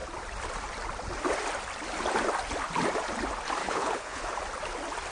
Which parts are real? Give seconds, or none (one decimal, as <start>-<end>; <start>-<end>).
0.0-3.6; 4.2-5.1